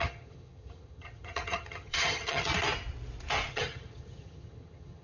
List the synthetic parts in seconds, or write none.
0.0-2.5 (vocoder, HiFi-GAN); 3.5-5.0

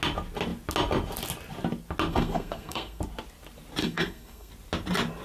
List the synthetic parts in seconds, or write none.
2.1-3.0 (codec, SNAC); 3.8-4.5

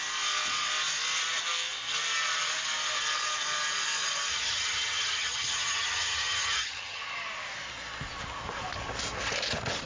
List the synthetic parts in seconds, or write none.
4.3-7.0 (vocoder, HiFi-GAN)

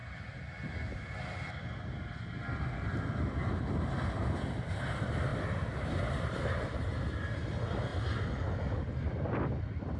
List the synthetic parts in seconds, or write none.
none